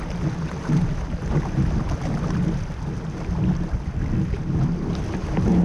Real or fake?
real